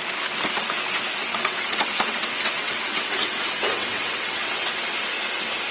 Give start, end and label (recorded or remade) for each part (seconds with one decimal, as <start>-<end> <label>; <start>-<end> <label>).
0.0-1.3 recorded; 1.3-4.7 remade; 4.7-5.7 recorded